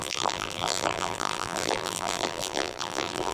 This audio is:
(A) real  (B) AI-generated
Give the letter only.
B